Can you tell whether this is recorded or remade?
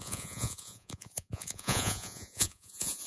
remade